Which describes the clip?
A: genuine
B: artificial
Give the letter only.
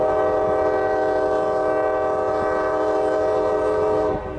A